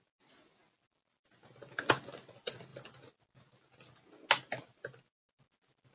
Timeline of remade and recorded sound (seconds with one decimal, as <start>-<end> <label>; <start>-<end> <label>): 0.0-5.9 recorded